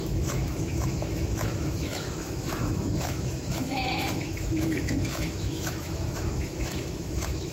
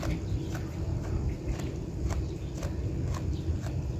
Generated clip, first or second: first